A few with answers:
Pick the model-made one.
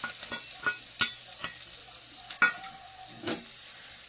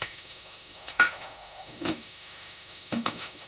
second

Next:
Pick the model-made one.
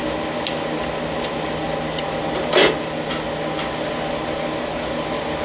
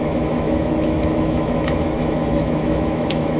second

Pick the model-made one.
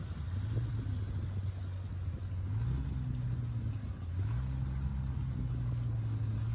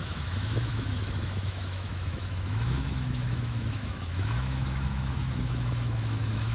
second